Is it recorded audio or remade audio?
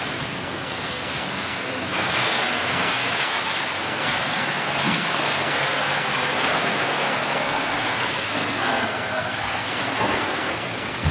remade